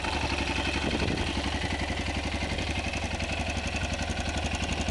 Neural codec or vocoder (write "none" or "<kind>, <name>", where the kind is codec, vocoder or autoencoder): none